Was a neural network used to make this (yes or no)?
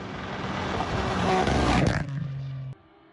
no